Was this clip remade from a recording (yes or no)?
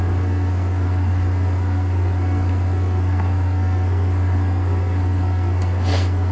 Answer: yes